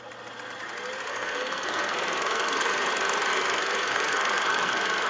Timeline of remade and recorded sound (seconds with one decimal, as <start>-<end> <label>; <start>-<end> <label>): 0.0-1.1 recorded; 1.1-2.9 remade; 2.9-3.3 recorded; 3.3-5.1 remade